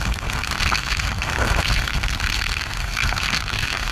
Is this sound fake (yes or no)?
yes